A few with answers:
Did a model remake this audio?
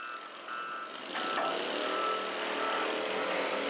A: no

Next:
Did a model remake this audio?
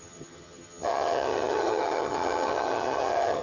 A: yes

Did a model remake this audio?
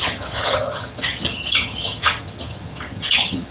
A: yes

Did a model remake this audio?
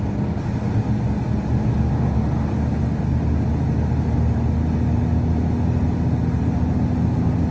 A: no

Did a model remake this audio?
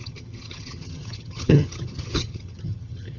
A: yes